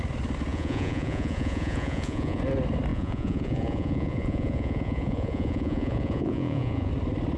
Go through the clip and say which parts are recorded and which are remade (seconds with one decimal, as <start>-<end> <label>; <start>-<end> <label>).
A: 0.0-0.5 recorded; 0.5-2.4 remade; 2.4-2.9 recorded; 2.9-6.9 remade; 6.9-7.4 recorded